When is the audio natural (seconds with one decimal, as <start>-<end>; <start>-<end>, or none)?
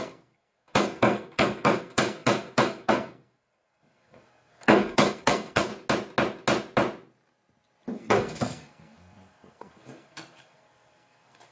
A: 5.7-7.9